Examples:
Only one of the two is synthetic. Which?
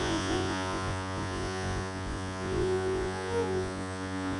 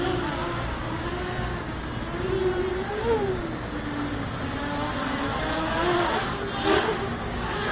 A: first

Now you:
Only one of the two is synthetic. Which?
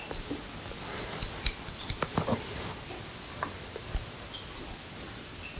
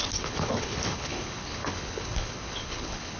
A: second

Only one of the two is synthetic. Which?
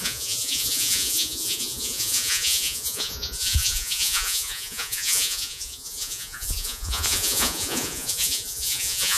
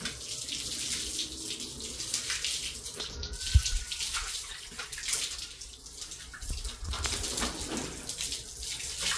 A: first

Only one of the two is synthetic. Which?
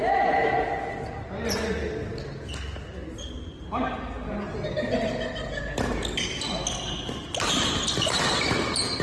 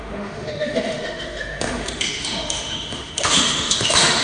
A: second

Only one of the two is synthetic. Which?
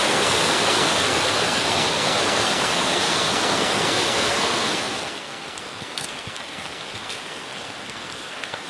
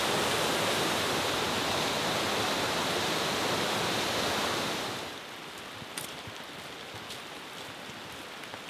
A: first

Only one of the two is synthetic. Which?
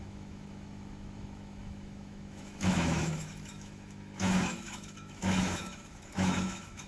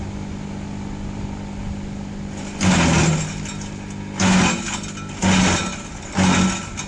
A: first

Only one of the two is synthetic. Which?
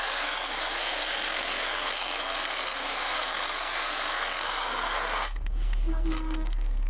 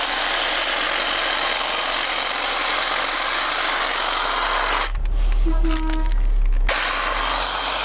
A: first